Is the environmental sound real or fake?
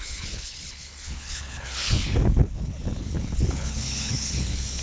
fake